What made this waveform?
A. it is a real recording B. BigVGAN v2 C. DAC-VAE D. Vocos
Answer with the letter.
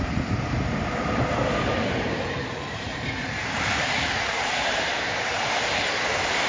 B